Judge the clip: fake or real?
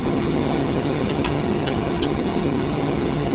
fake